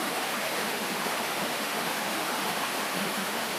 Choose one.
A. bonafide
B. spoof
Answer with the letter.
B